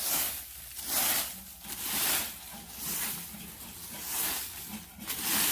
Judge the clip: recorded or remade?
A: recorded